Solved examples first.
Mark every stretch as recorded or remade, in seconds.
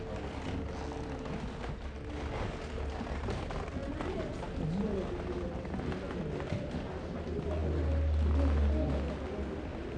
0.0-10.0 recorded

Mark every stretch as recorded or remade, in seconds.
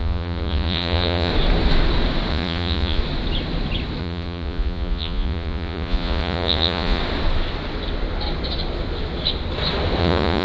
0.0-1.3 remade; 1.3-2.3 recorded; 2.3-3.0 remade; 3.0-4.0 recorded; 4.0-7.0 remade; 7.0-10.0 recorded; 10.0-10.4 remade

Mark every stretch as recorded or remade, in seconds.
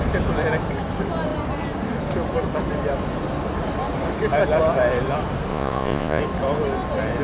0.0-5.5 recorded; 5.5-6.2 remade; 6.2-7.2 recorded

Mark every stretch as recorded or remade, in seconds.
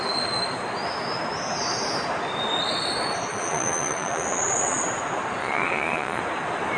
0.0-3.3 recorded; 3.3-4.8 remade; 4.8-5.4 recorded; 5.4-6.2 remade; 6.2-6.8 recorded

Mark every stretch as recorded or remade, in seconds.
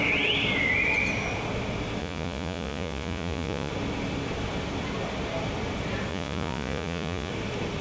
0.0-2.0 recorded; 2.0-3.7 remade; 3.7-6.1 recorded; 6.1-7.3 remade; 7.3-7.8 recorded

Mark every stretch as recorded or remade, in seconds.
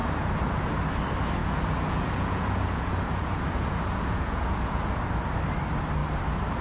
0.0-0.7 remade; 0.7-1.4 recorded; 1.4-4.8 remade; 4.8-6.6 recorded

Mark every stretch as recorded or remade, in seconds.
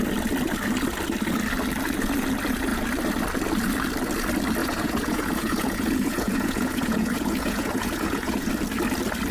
0.0-4.6 recorded; 4.6-8.5 remade; 8.5-9.3 recorded